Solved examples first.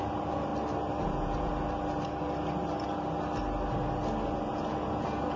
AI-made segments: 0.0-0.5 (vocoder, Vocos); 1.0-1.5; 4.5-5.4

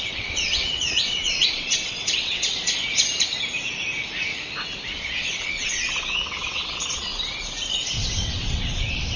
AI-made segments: 0.0-2.4 (vocoder, WaveNeXt); 5.1-7.1; 7.7-9.2

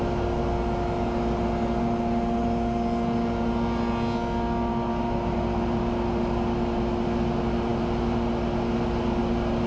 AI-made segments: none

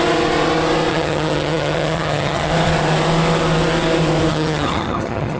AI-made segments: 0.9-2.5 (vocoder, HiFi-GAN); 4.3-5.4

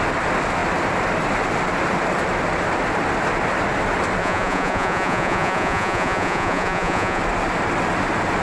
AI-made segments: 4.2-7.2 (vocoder, Vocos)

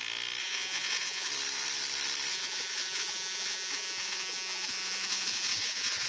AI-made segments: 0.4-1.3 (vocoder, Vocos); 2.3-6.1

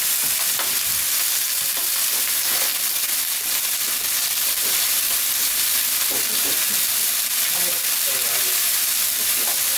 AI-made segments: 0.0-2.7 (vocoder, BigVGAN v2); 4.3-9.8

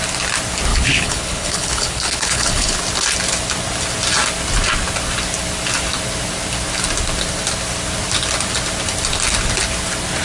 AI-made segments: 0.7-2.8 (codec, HILCodec)